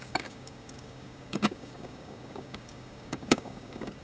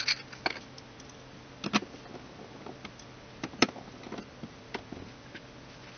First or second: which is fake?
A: first